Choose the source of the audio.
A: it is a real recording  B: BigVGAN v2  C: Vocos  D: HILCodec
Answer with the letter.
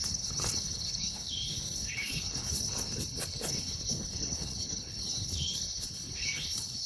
D